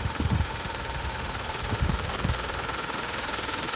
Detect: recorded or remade remade